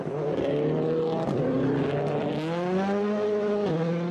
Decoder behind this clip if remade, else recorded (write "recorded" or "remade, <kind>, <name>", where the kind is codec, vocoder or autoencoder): recorded